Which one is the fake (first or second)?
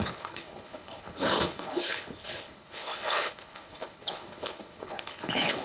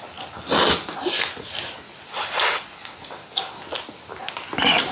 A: first